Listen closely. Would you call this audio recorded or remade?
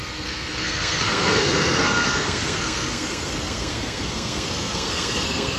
remade